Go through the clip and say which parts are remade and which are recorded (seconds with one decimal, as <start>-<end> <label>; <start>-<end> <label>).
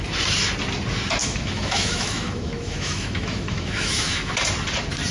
0.0-1.2 recorded; 1.2-4.3 remade; 4.3-5.1 recorded